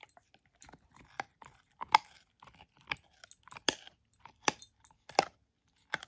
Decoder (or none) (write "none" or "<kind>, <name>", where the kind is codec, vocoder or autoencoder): none